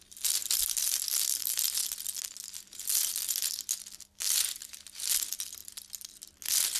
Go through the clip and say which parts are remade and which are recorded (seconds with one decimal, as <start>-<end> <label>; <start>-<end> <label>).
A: 0.0-6.8 recorded